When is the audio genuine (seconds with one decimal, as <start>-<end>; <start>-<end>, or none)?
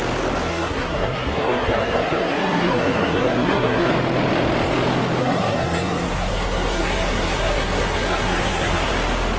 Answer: 0.0-0.5; 3.9-5.2; 8.9-9.4